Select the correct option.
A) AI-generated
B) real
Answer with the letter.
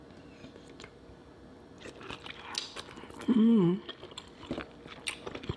B